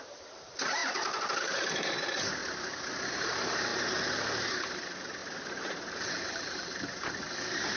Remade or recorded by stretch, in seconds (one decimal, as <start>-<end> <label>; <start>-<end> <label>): 0.0-0.8 remade; 0.8-1.4 recorded; 1.4-2.4 remade; 2.4-3.1 recorded; 3.1-3.7 remade; 3.7-4.7 recorded; 4.7-5.2 remade; 5.2-6.1 recorded; 6.1-7.8 remade